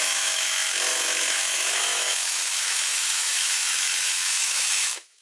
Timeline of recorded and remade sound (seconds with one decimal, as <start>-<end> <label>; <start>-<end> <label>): 0.0-5.2 remade